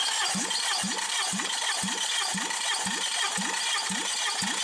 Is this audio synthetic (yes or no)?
no